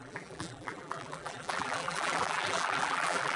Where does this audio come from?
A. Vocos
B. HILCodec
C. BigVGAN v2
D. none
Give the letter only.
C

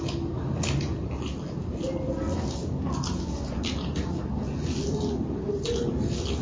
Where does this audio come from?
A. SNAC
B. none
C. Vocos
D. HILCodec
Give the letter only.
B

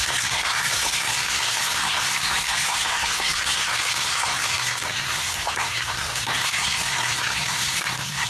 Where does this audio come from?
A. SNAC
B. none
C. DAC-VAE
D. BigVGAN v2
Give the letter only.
A